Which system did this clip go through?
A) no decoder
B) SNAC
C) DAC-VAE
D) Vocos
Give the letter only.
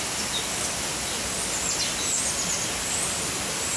A